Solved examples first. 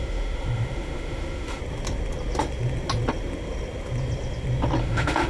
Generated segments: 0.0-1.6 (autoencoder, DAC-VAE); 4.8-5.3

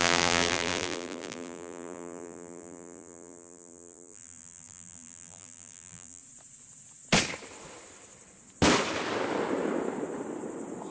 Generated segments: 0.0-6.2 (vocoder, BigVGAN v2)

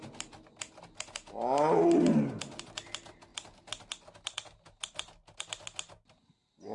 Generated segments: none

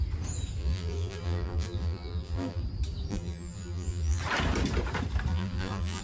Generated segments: 0.6-2.6 (vocoder, BigVGAN v2); 3.1-4.2; 5.3-6.0